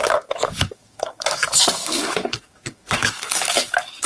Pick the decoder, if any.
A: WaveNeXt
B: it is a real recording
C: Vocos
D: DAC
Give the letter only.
D